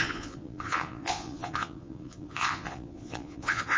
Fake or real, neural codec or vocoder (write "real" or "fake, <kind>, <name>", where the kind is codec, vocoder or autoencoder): fake, vocoder, Vocos